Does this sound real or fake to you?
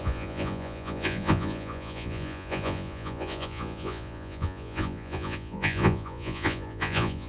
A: fake